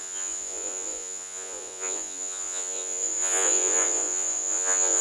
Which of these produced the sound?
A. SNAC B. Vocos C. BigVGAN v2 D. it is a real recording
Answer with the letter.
B